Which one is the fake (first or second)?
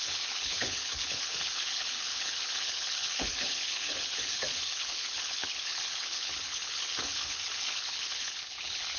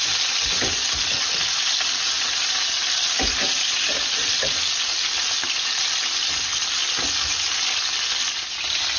first